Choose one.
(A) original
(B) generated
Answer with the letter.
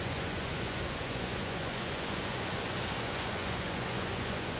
B